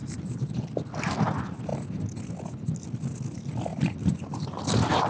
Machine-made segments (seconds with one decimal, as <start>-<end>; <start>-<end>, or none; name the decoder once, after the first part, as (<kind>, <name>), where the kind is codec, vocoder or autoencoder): 0.0-0.5 (vocoder, BigVGAN v2); 3.7-4.6